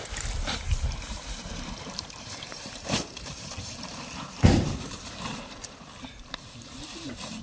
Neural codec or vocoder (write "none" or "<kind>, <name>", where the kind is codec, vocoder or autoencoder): vocoder, BigVGAN v2